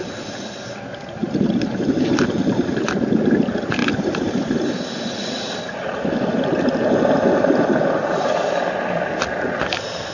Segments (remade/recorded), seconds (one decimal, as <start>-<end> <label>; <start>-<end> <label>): 0.0-3.8 recorded; 3.8-8.7 remade; 8.7-10.1 recorded